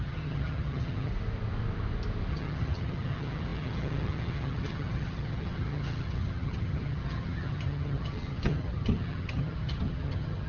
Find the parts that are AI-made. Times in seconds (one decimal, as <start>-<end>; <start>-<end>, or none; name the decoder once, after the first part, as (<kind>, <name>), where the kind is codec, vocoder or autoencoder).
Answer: 0.0-1.1 (vocoder, HiFi-GAN); 2.3-10.5